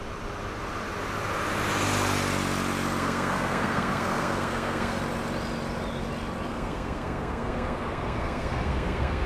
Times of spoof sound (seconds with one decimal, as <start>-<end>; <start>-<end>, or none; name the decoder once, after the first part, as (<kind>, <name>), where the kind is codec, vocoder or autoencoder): 3.0-5.0 (codec, SNAC); 6.5-9.3

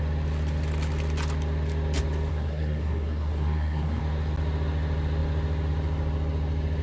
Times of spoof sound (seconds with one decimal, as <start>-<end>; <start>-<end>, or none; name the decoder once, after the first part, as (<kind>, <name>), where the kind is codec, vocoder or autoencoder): 2.3-4.0 (codec, SNAC)

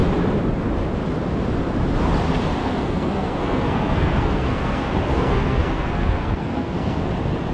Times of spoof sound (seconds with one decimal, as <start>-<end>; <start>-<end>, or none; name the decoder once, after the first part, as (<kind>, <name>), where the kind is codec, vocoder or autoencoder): 2.6-7.1 (codec, SNAC)

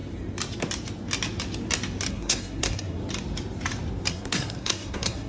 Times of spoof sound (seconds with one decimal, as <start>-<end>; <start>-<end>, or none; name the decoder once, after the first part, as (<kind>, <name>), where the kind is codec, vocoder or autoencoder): 2.1-3.0 (codec, SNAC); 4.1-5.3

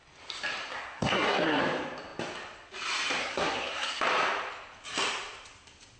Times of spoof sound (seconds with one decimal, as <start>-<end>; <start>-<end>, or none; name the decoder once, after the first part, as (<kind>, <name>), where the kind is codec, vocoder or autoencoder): 0.7-1.6 (codec, SNAC); 3.2-4.0

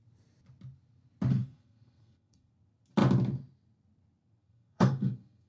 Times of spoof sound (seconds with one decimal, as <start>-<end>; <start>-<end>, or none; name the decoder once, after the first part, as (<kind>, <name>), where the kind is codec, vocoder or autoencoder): 1.3-2.5 (codec, SNAC); 4.4-5.5

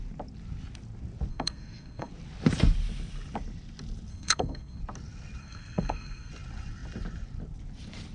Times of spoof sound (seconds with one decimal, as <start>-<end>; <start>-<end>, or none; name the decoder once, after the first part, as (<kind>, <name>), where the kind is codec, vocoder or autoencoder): 1.3-2.1 (codec, SNAC); 4.1-4.8; 5.4-6.3